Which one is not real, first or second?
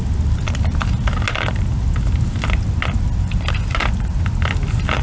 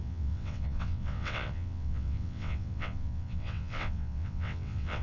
second